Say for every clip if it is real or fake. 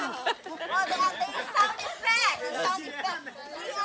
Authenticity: real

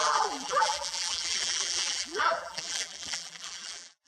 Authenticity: fake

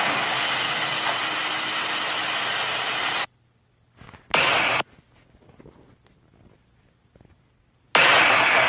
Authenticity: real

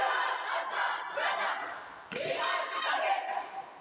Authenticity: fake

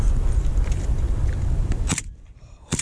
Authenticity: fake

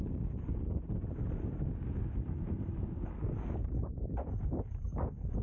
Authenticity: real